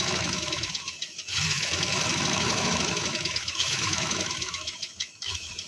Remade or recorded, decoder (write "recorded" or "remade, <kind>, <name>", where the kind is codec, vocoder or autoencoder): remade, autoencoder, DAC-VAE